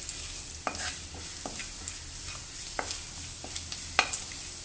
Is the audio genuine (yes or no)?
yes